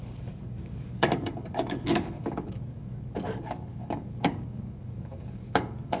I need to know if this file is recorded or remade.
remade